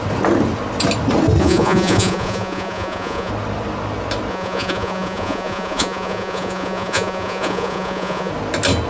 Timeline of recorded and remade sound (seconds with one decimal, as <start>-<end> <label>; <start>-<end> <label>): 0.0-1.4 recorded; 1.4-3.3 remade; 3.3-4.3 recorded; 4.3-8.3 remade; 8.3-8.9 recorded